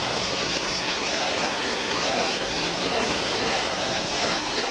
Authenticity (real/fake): fake